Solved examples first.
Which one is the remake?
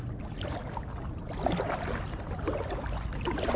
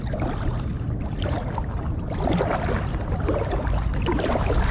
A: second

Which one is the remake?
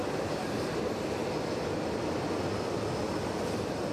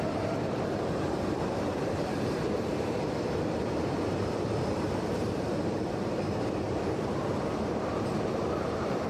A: second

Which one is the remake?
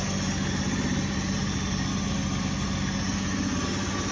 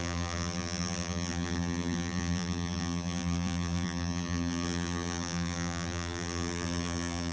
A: second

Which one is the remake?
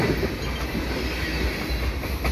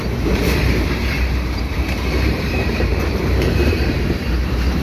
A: second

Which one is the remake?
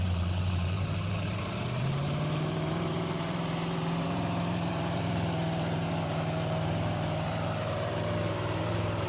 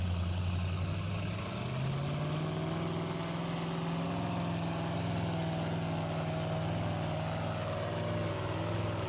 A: first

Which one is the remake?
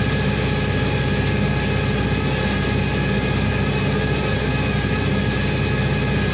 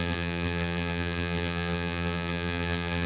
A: second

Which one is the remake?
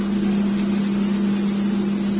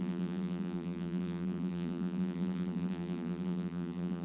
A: second